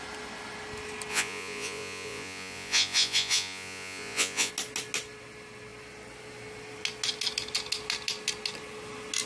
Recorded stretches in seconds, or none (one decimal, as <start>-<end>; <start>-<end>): 0.0-1.1; 4.5-9.3